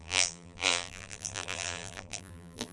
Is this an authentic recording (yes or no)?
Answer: no